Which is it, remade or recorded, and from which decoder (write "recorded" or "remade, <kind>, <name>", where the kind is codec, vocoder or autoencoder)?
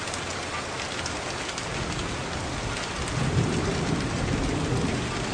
recorded